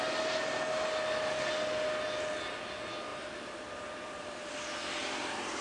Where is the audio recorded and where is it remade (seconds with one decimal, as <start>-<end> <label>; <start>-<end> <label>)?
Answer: 0.0-3.1 recorded; 3.1-4.5 remade; 4.5-5.0 recorded; 5.0-5.6 remade

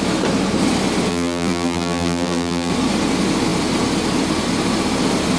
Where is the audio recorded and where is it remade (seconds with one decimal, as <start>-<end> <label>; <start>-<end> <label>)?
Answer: 0.0-1.1 recorded; 1.1-2.7 remade; 2.7-5.4 recorded

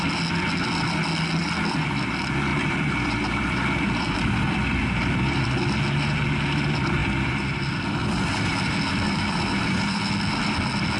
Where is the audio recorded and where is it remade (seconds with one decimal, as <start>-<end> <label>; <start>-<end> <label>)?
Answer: 0.0-1.4 recorded; 1.4-2.1 remade; 2.1-2.5 recorded; 2.5-5.4 remade; 5.4-7.0 recorded; 7.0-10.1 remade; 10.1-11.0 recorded

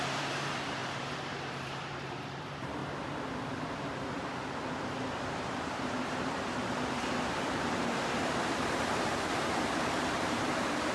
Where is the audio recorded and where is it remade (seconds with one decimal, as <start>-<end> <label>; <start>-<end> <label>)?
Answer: 0.0-2.8 remade; 2.8-6.3 recorded; 6.3-10.9 remade